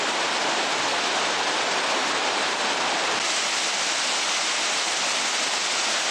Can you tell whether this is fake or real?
real